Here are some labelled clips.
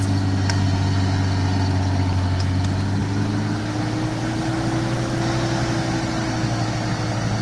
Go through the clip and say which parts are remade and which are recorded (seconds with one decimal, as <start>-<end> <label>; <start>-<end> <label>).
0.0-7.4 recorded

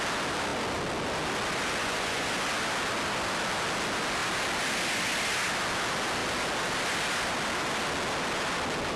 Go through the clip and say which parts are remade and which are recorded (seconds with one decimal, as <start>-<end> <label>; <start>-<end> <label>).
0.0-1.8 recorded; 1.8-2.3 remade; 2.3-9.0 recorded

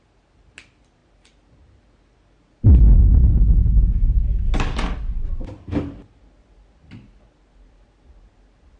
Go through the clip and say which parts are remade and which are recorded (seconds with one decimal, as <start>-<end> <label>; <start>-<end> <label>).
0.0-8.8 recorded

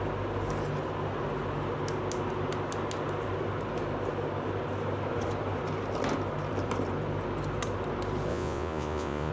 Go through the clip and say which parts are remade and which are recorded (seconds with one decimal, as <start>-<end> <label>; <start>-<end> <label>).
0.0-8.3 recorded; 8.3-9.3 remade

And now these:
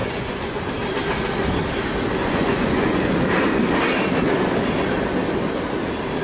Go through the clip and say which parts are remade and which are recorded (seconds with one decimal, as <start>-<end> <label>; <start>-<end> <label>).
0.0-0.6 remade; 0.6-2.2 recorded; 2.2-3.1 remade; 3.1-6.2 recorded

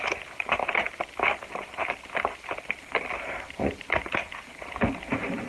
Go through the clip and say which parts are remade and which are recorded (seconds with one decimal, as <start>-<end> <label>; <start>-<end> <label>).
0.0-5.5 recorded